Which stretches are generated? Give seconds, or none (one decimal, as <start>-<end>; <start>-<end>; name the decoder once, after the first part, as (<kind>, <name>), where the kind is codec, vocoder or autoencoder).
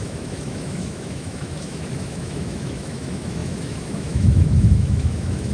0.0-5.5 (autoencoder, DAC-VAE)